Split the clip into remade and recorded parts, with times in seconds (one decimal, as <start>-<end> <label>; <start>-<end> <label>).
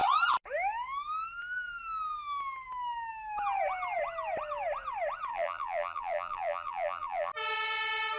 0.0-5.3 recorded; 5.3-7.3 remade; 7.3-8.2 recorded